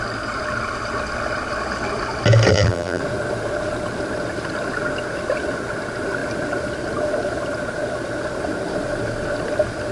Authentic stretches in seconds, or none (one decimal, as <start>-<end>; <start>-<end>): 0.0-2.5; 3.0-9.9